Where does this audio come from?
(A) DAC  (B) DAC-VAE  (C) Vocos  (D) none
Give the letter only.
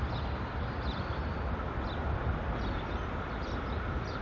D